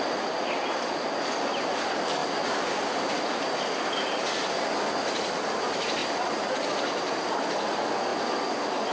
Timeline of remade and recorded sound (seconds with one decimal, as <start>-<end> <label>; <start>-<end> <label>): 0.0-8.9 recorded